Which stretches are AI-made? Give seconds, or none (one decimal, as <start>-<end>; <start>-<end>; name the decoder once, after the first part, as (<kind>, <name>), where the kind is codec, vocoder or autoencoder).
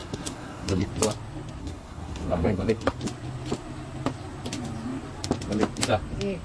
0.0-0.9 (codec, SNAC); 1.6-3.0